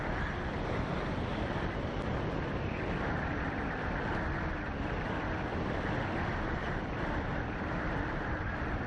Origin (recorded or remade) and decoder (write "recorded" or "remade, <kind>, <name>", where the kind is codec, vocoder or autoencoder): recorded